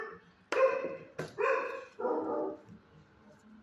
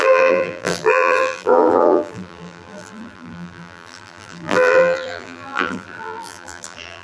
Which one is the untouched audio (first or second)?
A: first